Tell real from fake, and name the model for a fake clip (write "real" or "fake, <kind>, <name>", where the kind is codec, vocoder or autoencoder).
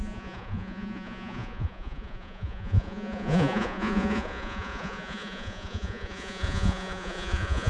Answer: fake, vocoder, Vocos